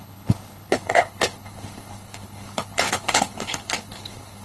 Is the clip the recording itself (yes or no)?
no